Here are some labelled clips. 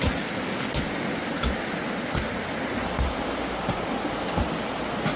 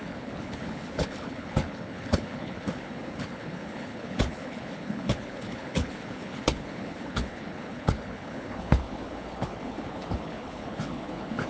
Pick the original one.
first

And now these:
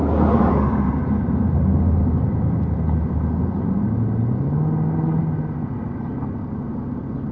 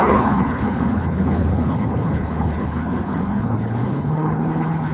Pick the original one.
first